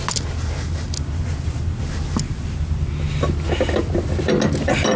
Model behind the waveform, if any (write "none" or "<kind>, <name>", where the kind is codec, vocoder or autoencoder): none